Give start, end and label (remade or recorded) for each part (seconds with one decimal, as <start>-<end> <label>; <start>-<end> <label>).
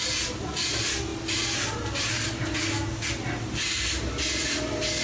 0.0-5.0 recorded